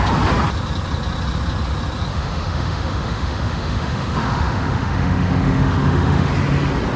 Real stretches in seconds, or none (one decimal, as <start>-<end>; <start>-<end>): 0.0-2.1; 6.3-7.0